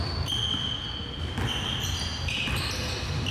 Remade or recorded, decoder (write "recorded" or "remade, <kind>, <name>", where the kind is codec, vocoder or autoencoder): recorded